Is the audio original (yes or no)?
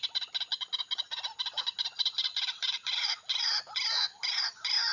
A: yes